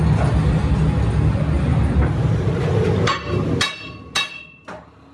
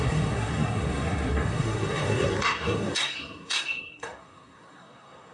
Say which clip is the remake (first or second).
second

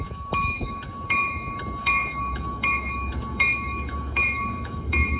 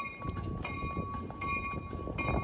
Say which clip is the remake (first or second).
first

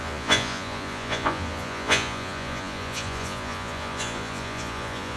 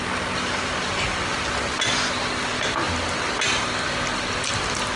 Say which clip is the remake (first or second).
first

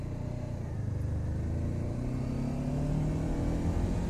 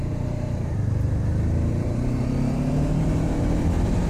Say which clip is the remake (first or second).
second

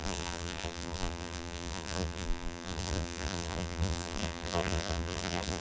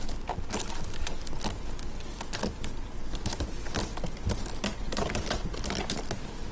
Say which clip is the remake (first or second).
first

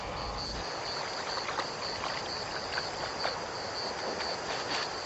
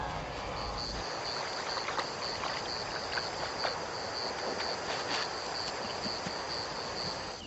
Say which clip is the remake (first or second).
first